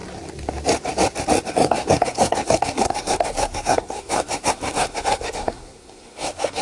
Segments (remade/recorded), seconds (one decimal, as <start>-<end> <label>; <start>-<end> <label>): 0.0-1.5 recorded; 1.5-6.6 remade